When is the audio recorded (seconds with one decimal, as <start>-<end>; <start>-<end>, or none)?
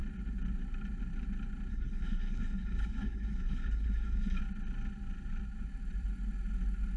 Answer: 0.0-1.7; 4.4-7.0